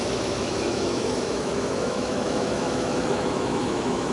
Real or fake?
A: fake